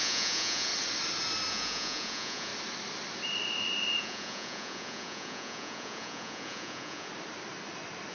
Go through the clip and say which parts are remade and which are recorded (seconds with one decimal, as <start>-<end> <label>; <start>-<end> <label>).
0.0-0.7 remade; 0.7-1.5 recorded; 1.5-2.5 remade; 2.5-4.0 recorded; 4.0-7.1 remade; 7.1-8.1 recorded